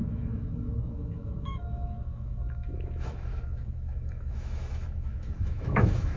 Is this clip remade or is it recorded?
remade